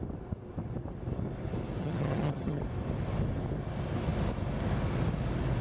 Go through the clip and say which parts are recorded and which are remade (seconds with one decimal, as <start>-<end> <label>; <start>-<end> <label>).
0.0-1.8 recorded; 1.8-2.6 remade; 2.6-5.6 recorded